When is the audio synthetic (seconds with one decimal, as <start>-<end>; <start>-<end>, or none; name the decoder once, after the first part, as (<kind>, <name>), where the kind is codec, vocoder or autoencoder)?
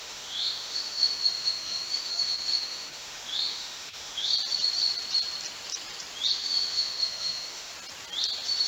0.0-4.3 (autoencoder, DAC-VAE); 6.3-7.7